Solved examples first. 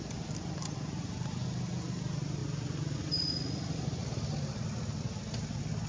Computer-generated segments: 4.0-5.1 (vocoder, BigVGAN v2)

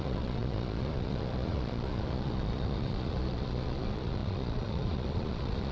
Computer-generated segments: 0.0-5.7 (vocoder, Vocos)

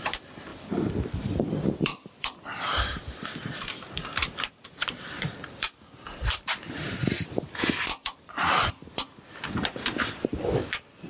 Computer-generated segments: 0.0-11.1 (vocoder, BigVGAN v2)